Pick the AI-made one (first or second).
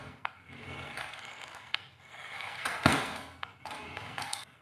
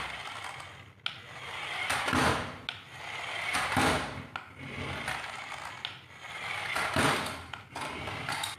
first